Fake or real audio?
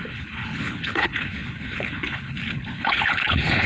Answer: fake